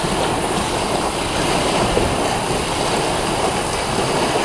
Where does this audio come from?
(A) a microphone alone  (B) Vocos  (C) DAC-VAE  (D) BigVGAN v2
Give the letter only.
A